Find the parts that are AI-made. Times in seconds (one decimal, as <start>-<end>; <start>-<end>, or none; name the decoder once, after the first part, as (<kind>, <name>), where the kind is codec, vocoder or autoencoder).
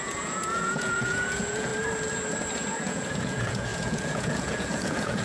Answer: 0.0-1.7 (vocoder, Vocos); 2.7-5.2